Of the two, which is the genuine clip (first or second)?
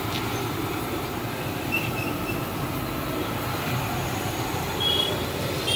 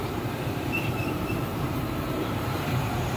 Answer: first